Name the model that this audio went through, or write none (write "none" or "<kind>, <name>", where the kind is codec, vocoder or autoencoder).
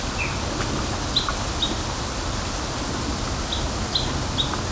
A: none